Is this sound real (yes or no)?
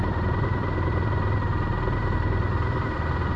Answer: no